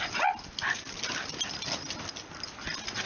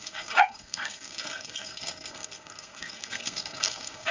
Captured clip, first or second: first